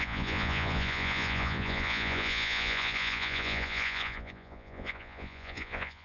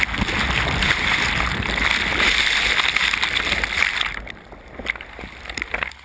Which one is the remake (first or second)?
first